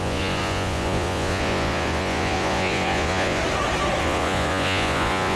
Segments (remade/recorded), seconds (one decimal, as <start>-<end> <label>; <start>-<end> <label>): 0.0-3.4 remade; 3.4-4.0 recorded; 4.0-5.4 remade